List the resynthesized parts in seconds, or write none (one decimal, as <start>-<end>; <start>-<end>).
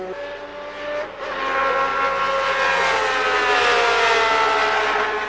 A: none